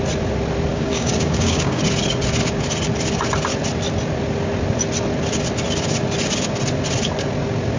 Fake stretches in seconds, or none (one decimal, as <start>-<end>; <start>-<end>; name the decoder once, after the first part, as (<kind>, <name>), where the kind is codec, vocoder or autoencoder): 0.7-1.8 (codec, DAC)